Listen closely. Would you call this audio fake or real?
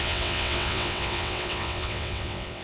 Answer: fake